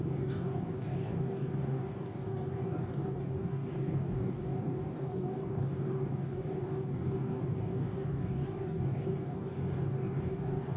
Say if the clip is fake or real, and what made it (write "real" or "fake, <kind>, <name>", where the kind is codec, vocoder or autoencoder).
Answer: fake, codec, DAC